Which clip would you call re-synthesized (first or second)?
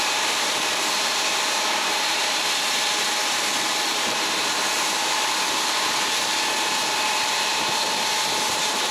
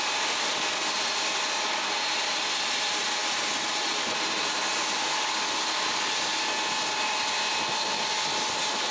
first